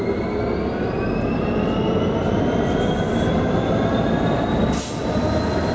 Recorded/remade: recorded